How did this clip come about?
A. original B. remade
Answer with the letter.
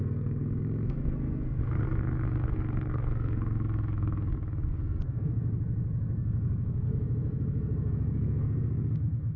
B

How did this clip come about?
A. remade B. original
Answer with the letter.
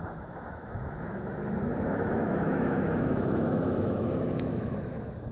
A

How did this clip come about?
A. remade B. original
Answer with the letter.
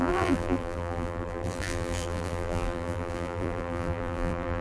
A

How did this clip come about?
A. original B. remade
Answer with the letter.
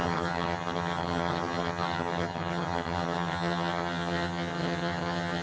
B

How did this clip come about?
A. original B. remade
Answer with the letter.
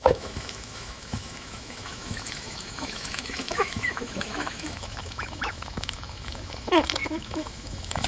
B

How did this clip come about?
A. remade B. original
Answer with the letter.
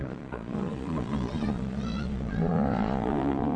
A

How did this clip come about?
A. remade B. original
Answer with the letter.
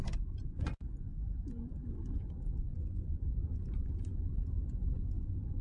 A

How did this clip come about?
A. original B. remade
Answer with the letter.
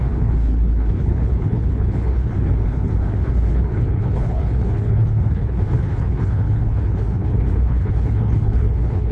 B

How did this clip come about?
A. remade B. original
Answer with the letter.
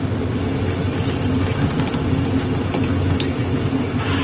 B